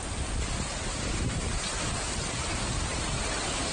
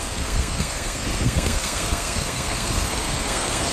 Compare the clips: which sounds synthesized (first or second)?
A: second